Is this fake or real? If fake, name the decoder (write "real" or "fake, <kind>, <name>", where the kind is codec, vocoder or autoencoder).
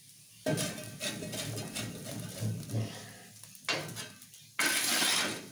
real